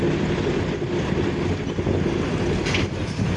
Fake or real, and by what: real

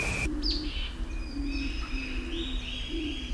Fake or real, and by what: real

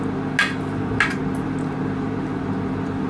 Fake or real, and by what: real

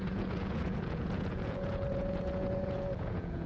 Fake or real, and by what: fake, vocoder, Vocos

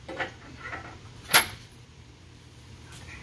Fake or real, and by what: fake, vocoder, BigVGAN v2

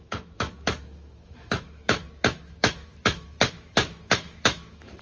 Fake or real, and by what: fake, autoencoder, DAC-VAE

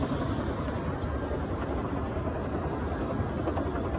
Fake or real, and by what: real